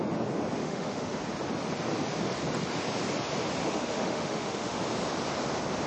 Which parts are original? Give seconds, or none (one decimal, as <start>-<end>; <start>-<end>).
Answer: 0.0-0.6; 1.2-3.6; 4.8-5.9